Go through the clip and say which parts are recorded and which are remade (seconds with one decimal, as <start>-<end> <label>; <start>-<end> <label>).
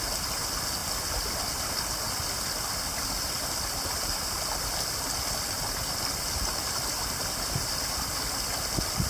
0.0-9.1 recorded